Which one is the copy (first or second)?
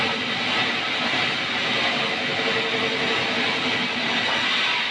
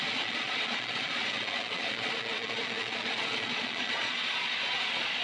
second